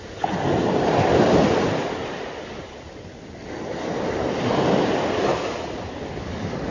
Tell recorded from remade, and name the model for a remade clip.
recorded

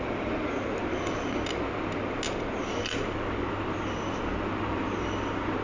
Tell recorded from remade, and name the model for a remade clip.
recorded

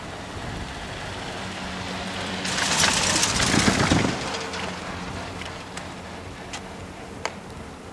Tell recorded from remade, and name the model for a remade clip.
recorded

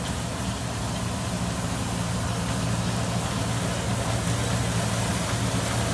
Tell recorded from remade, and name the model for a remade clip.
recorded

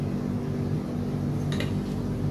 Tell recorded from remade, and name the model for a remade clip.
recorded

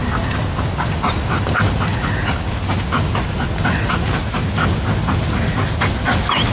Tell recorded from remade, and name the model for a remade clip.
recorded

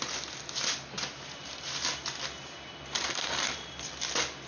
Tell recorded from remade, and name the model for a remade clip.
recorded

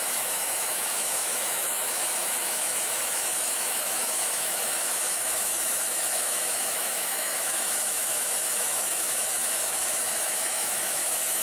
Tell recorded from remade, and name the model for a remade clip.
remade, autoencoder, DAC-VAE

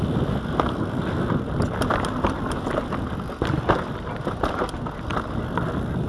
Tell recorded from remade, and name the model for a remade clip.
recorded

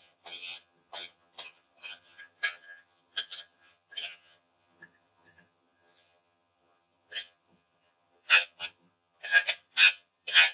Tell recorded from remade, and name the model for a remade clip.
remade, vocoder, HiFi-GAN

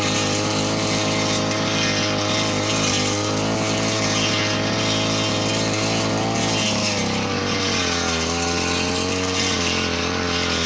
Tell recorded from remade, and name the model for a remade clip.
recorded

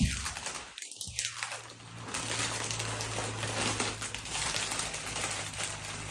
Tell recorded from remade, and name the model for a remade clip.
recorded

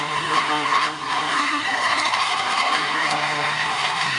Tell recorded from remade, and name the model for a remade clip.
remade, codec, SNAC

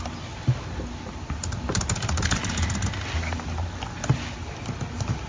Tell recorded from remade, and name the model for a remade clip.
recorded